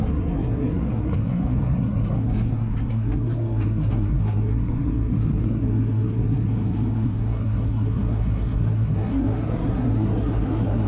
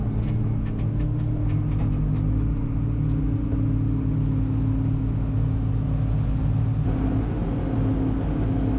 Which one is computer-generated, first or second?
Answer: first